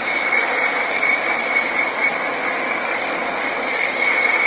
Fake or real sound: fake